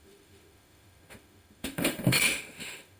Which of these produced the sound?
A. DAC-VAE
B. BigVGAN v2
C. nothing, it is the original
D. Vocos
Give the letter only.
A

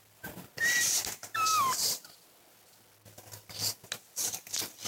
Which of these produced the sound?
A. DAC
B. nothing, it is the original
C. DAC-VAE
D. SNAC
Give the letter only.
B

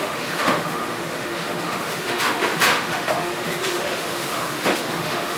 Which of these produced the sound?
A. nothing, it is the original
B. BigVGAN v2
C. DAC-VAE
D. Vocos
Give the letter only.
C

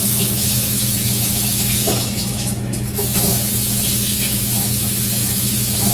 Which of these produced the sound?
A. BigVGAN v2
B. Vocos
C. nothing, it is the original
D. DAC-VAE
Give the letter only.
D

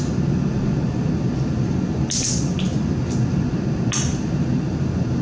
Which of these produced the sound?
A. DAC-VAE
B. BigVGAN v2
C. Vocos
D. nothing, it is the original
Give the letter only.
D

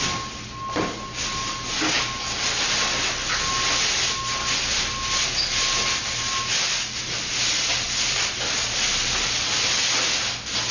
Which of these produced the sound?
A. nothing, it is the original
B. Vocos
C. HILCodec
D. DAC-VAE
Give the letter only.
A